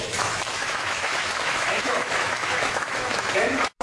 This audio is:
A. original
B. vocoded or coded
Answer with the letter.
B